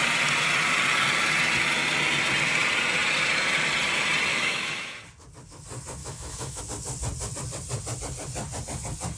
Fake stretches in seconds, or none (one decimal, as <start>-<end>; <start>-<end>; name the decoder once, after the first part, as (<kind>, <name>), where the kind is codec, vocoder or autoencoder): 4.3-5.0 (autoencoder, DAC-VAE); 6.0-6.6